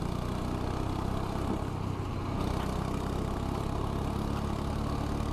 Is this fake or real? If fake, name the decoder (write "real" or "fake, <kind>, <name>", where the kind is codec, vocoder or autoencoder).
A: real